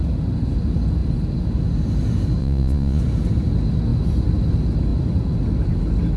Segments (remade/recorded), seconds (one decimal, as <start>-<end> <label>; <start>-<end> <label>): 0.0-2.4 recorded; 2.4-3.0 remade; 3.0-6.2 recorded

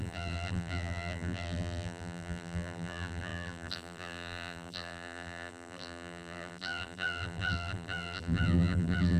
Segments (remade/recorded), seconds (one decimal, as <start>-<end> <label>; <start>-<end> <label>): 0.0-9.2 remade

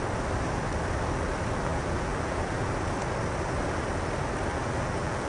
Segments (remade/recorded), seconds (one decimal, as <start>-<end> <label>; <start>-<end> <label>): 0.0-1.7 recorded; 1.7-2.7 remade; 2.7-4.5 recorded; 4.5-5.3 remade

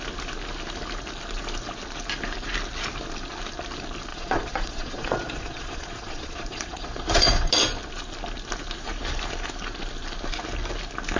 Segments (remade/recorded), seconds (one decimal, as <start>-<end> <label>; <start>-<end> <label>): 0.0-4.1 recorded; 4.1-7.5 remade; 7.5-11.2 recorded

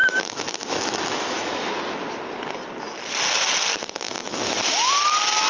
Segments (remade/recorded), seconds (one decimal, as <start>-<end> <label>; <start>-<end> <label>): 0.0-1.7 remade; 1.7-3.7 recorded; 3.7-4.9 remade; 4.9-5.5 recorded